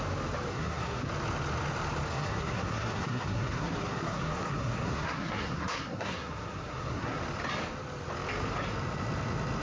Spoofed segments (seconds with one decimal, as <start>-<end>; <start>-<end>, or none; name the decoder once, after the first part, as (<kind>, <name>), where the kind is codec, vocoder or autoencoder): 0.5-1.1 (codec, SNAC); 2.1-7.2